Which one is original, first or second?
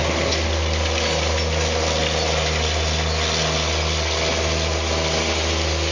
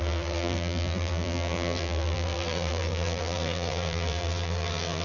first